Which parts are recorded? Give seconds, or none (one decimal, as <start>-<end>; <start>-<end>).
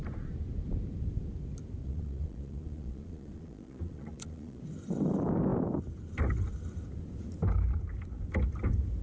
0.0-1.8; 4.6-9.0